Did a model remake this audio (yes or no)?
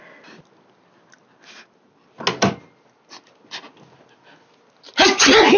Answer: no